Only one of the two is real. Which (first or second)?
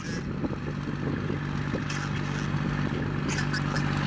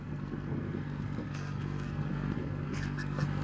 first